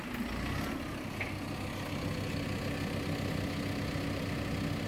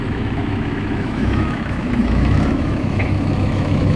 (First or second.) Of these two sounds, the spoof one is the second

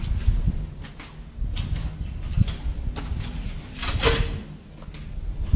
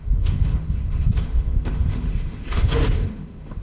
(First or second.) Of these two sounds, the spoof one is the second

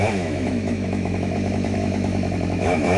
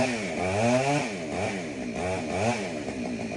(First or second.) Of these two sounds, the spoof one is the first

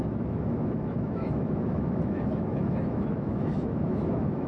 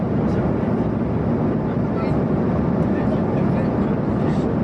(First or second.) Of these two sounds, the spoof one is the first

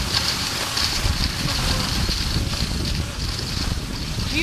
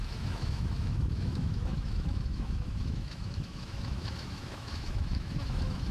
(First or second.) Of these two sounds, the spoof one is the second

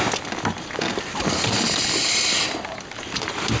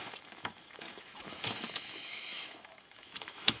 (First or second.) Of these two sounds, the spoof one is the second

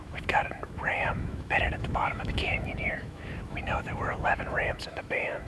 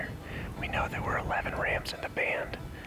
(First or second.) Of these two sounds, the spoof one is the first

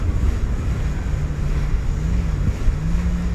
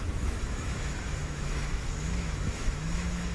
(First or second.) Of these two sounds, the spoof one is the second